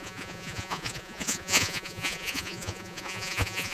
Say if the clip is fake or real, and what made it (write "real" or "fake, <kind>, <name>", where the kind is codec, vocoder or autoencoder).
fake, vocoder, Vocos